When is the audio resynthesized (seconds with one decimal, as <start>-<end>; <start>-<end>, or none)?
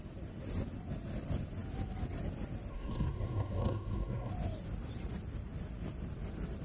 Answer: 2.7-4.3